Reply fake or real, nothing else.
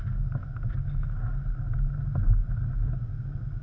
real